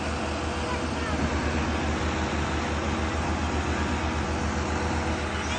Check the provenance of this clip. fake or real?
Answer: real